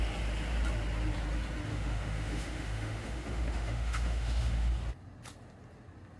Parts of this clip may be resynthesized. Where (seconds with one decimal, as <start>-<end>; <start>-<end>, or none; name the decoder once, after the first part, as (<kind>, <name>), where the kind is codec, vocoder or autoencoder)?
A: 1.7-4.7 (autoencoder, DAC-VAE)